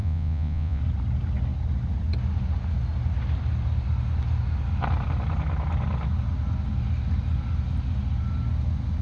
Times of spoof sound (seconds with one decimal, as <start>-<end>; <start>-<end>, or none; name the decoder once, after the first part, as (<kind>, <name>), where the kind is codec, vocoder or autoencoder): 0.0-0.8 (vocoder, Vocos)

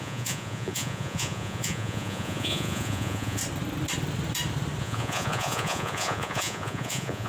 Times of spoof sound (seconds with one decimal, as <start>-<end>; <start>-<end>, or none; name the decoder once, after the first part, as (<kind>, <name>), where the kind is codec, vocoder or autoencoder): 0.0-3.4 (vocoder, Vocos); 4.8-7.3

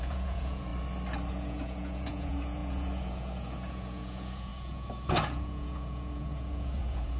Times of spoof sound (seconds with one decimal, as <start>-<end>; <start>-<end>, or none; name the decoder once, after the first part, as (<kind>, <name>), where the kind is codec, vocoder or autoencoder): 0.0-0.7 (vocoder, Vocos); 1.3-7.2